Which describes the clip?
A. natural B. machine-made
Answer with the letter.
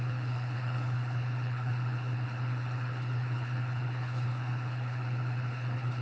B